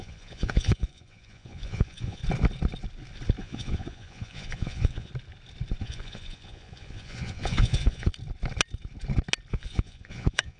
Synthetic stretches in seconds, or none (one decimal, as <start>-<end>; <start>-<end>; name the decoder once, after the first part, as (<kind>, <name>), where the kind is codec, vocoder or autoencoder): 0.0-2.2 (vocoder, Vocos); 3.4-5.1; 5.8-8.1; 9.5-10.6